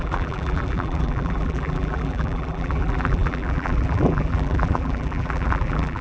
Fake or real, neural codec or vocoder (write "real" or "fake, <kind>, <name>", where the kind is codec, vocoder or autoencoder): fake, vocoder, BigVGAN v2